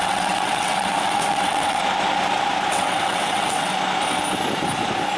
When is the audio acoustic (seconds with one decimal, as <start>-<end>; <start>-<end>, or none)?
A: 1.8-2.7; 3.7-5.2